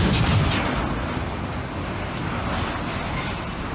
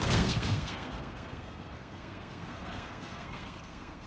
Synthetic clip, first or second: second